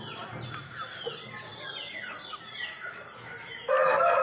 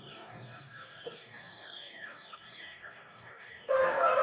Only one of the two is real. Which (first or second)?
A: first